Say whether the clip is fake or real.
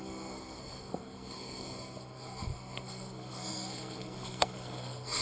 fake